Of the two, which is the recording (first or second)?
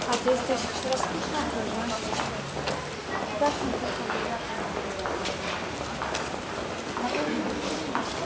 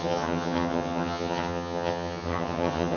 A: first